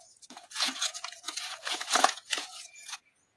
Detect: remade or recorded remade